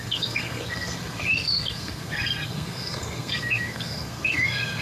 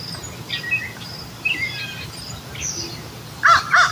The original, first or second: second